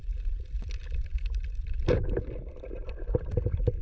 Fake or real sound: fake